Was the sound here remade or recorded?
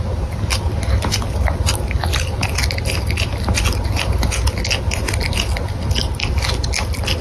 recorded